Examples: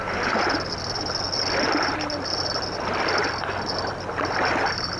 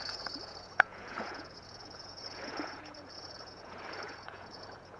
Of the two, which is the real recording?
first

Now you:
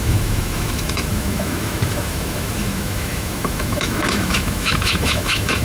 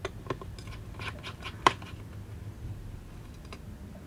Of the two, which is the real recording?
second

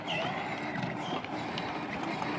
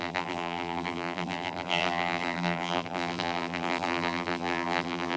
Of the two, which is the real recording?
first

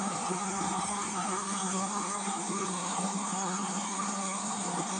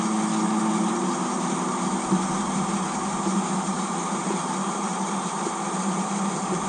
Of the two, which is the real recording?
second